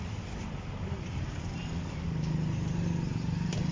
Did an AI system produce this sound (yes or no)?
no